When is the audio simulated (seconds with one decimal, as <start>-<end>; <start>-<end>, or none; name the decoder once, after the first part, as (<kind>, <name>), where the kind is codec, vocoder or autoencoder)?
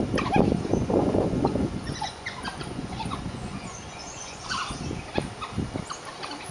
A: 0.7-4.6 (vocoder, Vocos)